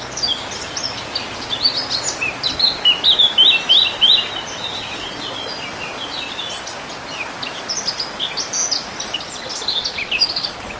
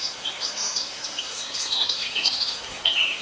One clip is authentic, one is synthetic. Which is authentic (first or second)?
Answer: first